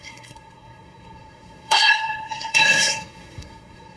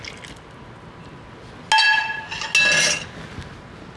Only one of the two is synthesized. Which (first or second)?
first